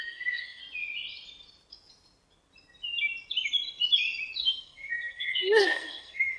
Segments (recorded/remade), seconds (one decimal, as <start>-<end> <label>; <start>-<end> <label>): 0.0-0.6 remade; 0.6-4.4 recorded; 4.4-6.4 remade